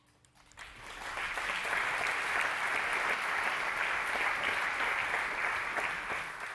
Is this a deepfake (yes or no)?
no